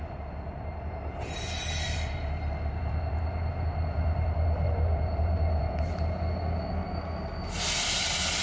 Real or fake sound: real